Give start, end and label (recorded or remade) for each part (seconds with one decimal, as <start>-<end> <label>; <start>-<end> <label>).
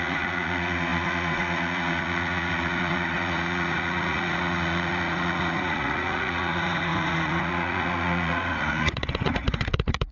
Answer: 0.0-10.1 remade